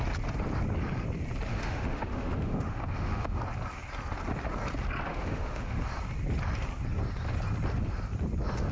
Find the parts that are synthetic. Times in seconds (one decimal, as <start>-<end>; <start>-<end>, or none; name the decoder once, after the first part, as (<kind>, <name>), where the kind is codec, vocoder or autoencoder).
1.5-3.4 (autoencoder, DAC-VAE); 5.1-5.8